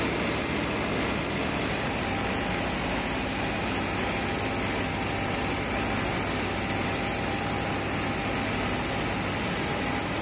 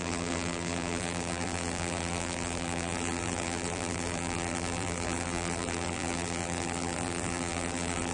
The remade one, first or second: second